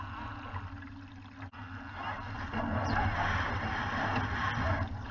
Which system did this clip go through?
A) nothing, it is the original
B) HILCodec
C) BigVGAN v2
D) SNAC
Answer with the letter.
A